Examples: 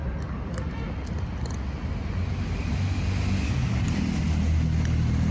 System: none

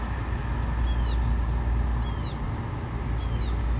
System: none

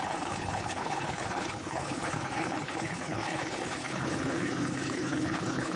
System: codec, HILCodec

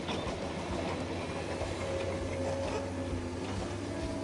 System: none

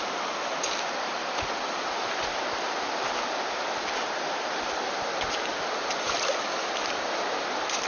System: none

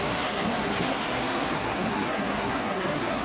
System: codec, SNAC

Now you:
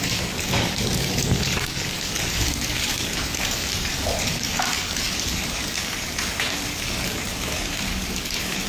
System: codec, DAC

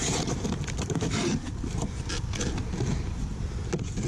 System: none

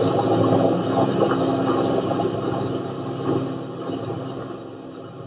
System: none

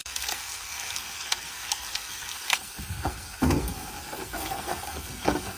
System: codec, SNAC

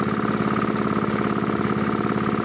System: none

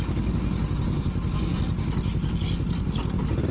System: none